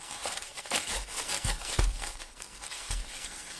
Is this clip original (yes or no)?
no